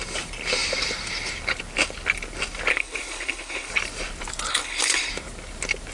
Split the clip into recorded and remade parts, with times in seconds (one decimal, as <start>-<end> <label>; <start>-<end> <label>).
0.0-2.7 recorded; 2.7-3.7 remade; 3.7-4.5 recorded; 4.5-5.1 remade; 5.1-5.9 recorded